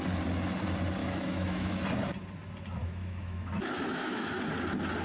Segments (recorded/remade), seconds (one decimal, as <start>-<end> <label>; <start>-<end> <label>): 0.0-1.0 recorded; 1.0-1.8 remade; 1.8-2.8 recorded; 2.8-4.3 remade; 4.3-5.0 recorded